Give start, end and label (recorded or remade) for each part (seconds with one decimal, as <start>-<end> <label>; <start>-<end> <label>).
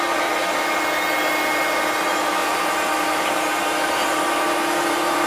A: 0.0-2.4 recorded; 2.4-5.3 remade